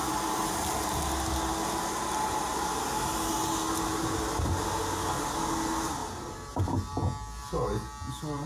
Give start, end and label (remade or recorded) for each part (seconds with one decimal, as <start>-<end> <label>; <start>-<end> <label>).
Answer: 0.0-8.5 recorded